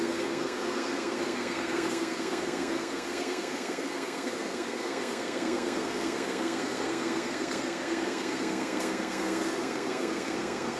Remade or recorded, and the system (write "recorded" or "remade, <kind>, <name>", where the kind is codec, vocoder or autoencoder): remade, codec, SNAC